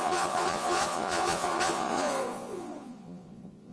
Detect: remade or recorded remade